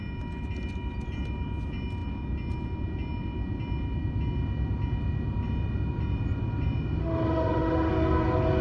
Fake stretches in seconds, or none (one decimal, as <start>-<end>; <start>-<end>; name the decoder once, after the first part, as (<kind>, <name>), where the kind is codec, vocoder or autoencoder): 7.0-7.9 (autoencoder, DAC-VAE)